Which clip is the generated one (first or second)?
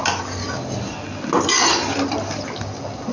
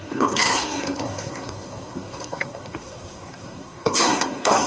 second